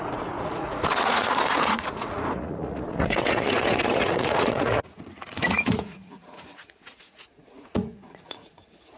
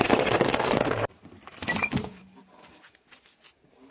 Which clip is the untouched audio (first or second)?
second